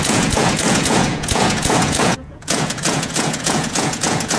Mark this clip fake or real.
fake